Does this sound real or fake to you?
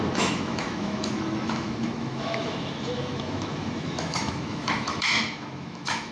fake